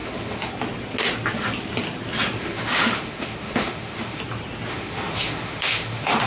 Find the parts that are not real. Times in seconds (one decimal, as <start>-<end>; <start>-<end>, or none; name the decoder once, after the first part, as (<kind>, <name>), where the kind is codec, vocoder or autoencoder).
0.0-0.5 (autoencoder, DAC-VAE); 2.4-4.2; 4.7-6.3